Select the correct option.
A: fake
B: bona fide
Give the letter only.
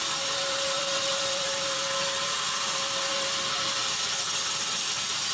A